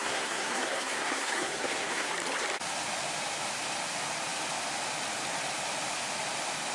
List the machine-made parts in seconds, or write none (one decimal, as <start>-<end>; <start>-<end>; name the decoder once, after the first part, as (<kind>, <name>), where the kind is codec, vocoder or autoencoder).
0.0-2.1 (codec, SNAC)